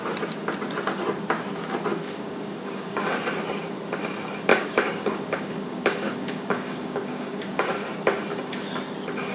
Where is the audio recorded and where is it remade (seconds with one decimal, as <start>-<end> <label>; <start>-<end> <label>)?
0.0-1.9 recorded; 1.9-3.0 remade; 3.0-4.5 recorded; 4.5-7.7 remade; 7.7-9.3 recorded